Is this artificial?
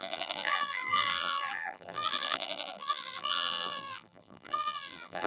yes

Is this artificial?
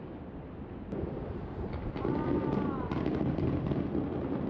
yes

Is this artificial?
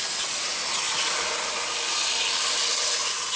no